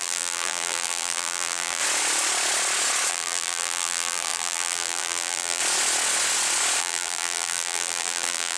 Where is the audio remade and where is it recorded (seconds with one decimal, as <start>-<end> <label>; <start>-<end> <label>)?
0.0-1.8 remade; 1.8-3.1 recorded; 3.1-5.6 remade; 5.6-6.8 recorded; 6.8-8.6 remade